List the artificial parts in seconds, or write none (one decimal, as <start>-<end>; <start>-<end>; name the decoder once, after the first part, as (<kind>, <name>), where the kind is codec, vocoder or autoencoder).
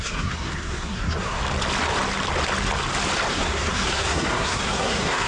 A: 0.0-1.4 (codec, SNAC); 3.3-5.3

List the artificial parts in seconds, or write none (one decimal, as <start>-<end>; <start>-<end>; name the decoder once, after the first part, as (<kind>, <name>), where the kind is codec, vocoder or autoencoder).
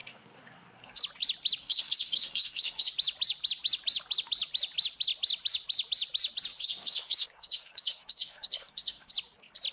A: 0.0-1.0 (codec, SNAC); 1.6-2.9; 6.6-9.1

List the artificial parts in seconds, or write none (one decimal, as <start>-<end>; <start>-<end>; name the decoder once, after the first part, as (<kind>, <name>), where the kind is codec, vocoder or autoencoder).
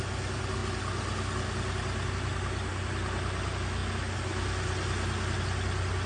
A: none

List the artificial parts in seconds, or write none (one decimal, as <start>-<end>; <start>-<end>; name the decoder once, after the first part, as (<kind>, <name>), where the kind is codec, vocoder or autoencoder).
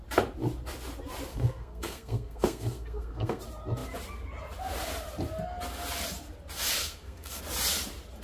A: 1.3-3.4 (codec, SNAC); 6.8-7.4